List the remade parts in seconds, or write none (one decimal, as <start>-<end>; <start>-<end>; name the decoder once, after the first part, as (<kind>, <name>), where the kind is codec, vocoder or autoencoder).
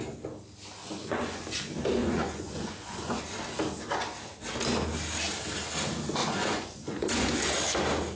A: 0.8-1.6 (vocoder, Vocos); 2.0-3.2; 6.2-7.5